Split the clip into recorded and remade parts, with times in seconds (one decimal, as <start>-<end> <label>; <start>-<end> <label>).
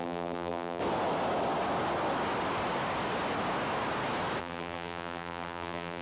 0.0-0.8 remade; 0.8-4.4 recorded; 4.4-6.0 remade